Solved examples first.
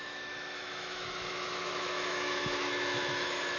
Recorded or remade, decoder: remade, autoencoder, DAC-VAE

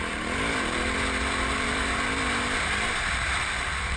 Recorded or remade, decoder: remade, vocoder, BigVGAN v2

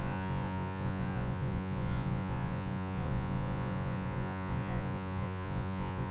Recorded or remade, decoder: remade, vocoder, Vocos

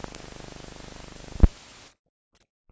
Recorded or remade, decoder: recorded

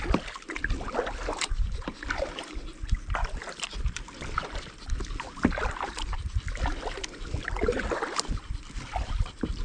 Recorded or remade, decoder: recorded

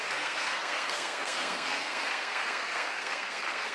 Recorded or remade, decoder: remade, codec, SNAC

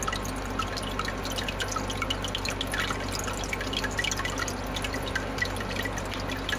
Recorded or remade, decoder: recorded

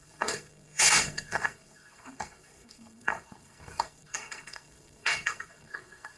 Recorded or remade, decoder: remade, codec, SNAC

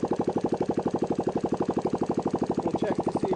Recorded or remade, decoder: recorded